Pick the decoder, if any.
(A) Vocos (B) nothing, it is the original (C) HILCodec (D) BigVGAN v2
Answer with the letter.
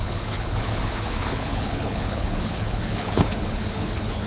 C